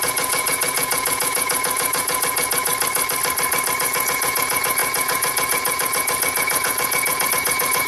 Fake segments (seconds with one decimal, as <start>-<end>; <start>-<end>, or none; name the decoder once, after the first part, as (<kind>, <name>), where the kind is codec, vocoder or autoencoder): 0.0-2.7 (vocoder, Vocos); 3.8-7.9